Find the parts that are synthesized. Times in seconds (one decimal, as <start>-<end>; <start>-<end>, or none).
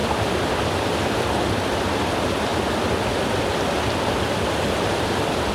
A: 0.0-0.5